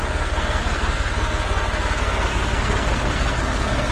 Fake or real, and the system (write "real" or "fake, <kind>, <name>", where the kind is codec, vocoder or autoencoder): fake, codec, SNAC